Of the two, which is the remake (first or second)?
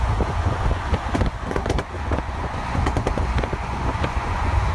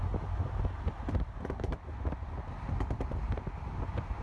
first